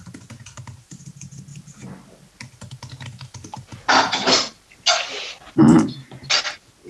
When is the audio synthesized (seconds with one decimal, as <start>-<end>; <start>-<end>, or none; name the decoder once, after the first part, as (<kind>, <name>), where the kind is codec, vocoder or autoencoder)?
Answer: none